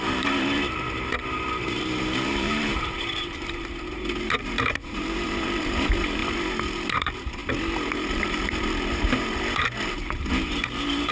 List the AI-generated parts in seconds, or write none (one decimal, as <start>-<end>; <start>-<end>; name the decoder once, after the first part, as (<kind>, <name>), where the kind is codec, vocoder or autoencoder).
0.0-6.2 (vocoder, BigVGAN v2); 6.7-7.4; 8.1-11.1